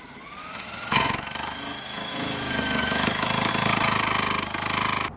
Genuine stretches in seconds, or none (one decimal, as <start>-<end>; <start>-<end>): 0.0-0.4; 3.5-5.2